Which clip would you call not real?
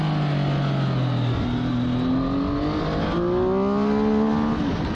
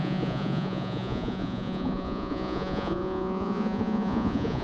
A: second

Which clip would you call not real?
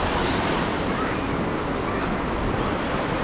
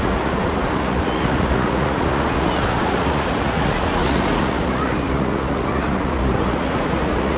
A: second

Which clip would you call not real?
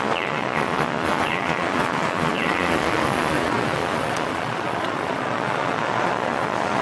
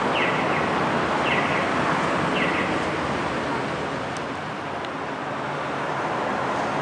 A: first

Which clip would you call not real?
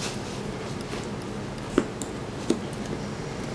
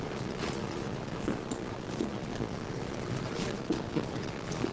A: second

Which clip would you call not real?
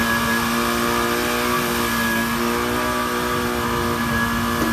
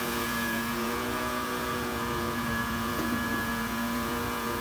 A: second